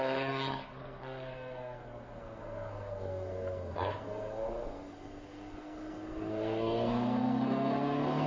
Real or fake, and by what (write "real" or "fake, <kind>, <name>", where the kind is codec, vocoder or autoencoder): fake, codec, SNAC